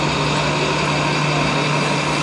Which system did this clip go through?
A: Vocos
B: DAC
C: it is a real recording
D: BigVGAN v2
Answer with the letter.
C